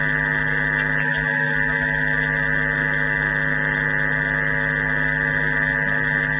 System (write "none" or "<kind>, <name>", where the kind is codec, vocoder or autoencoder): none